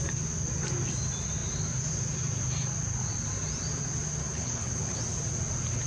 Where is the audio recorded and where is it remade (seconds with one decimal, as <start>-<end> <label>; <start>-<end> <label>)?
0.0-4.2 recorded; 4.2-5.0 remade; 5.0-5.9 recorded